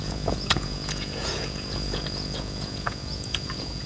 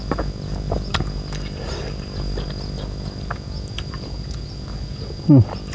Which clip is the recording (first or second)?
second